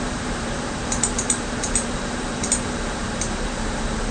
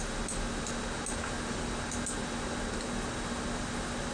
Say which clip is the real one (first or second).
second